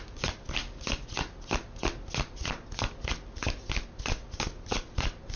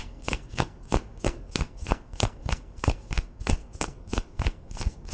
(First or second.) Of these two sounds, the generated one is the second